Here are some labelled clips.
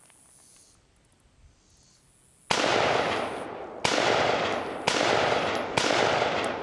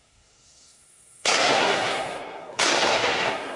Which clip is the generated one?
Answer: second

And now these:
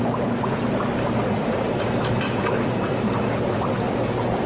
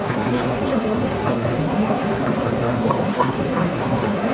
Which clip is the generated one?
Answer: second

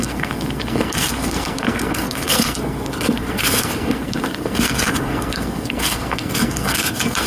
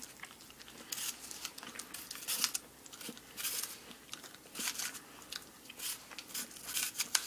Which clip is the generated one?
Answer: first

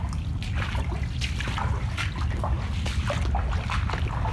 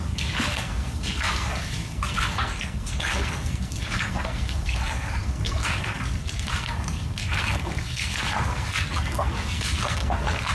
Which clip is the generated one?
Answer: second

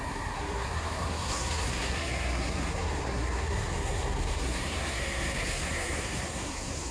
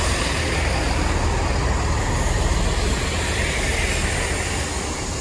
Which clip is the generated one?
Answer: first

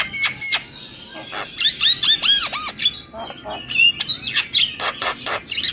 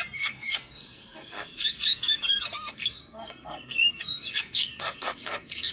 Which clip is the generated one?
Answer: second